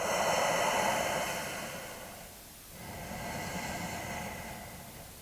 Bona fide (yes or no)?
yes